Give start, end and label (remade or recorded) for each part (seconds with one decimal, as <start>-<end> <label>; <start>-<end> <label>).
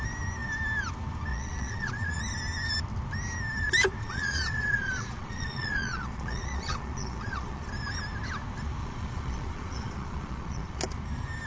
0.0-1.3 recorded; 1.3-2.2 remade; 2.2-4.0 recorded; 4.0-7.7 remade; 7.7-8.8 recorded; 8.8-10.8 remade; 10.8-11.5 recorded